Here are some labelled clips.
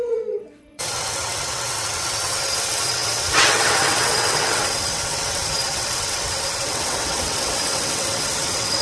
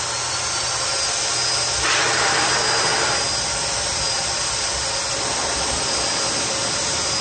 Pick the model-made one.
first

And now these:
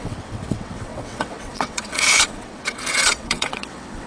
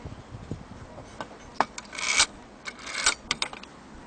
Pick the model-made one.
first